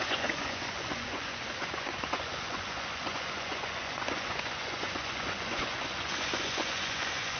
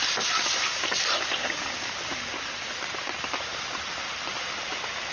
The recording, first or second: second